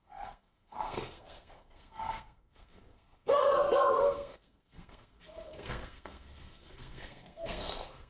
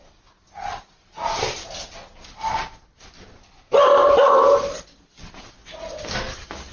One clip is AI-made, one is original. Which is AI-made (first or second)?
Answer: first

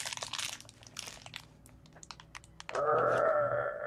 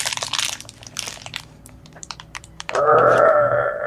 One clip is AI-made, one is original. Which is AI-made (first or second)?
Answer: second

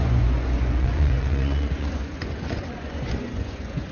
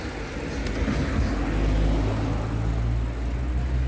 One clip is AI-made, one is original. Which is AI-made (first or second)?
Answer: first